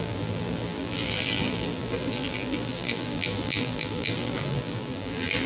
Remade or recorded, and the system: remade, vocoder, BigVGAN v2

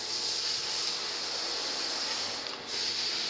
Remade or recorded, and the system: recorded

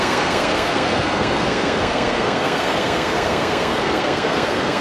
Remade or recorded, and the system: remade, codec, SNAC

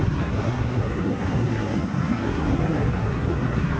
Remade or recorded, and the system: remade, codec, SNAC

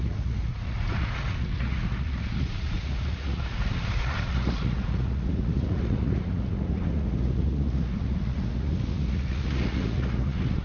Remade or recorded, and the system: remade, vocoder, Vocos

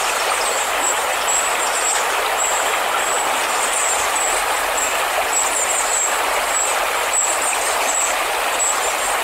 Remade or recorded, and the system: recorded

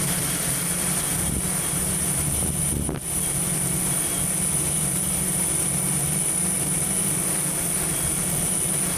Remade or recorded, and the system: remade, vocoder, BigVGAN v2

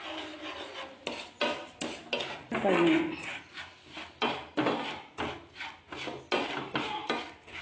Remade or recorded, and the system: recorded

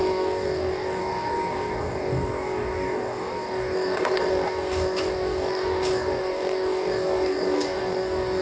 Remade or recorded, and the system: remade, codec, DAC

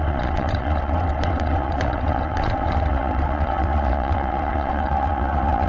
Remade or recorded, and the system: remade, vocoder, WaveNeXt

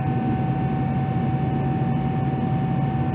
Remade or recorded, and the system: recorded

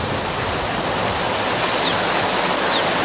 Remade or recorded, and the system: recorded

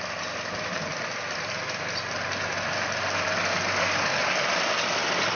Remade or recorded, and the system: recorded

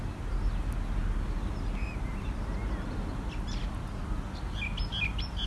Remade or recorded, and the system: recorded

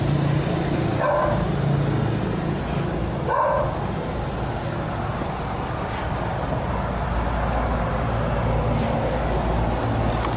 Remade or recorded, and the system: recorded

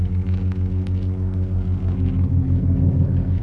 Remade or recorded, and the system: remade, codec, SNAC